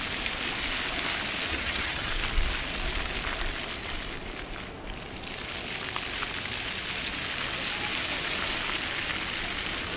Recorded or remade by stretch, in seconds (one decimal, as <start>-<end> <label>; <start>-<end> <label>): 0.0-1.5 recorded; 1.5-2.1 remade; 2.1-10.0 recorded